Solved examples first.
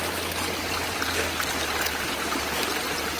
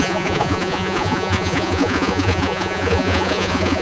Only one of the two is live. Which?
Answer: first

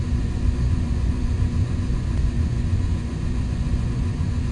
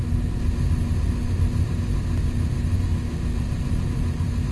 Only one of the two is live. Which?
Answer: second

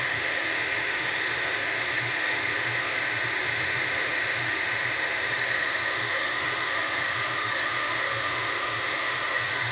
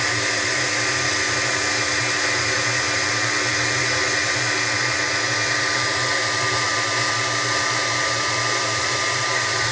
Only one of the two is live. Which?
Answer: second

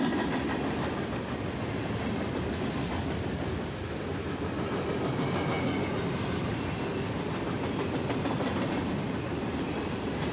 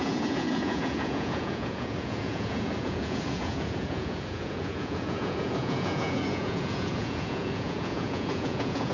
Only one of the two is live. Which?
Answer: first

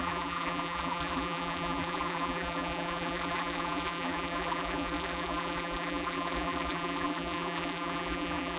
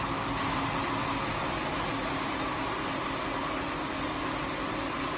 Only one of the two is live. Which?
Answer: second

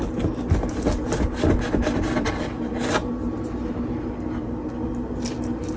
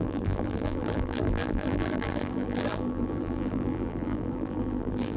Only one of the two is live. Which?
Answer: first